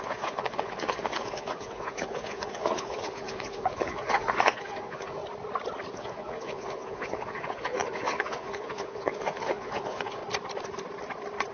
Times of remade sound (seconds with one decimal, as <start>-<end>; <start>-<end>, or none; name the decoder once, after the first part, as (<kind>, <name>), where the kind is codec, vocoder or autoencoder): 0.0-5.2 (vocoder, Vocos); 5.9-10.2